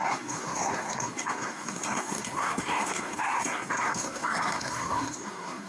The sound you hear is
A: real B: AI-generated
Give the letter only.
B